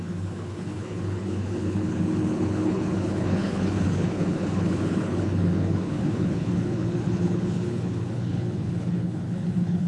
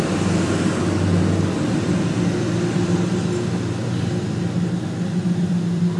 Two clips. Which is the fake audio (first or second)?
first